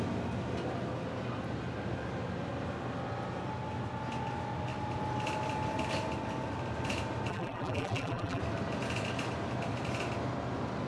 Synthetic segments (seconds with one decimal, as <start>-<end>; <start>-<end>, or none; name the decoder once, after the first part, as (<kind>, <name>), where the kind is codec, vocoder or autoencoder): 7.3-8.4 (vocoder, BigVGAN v2)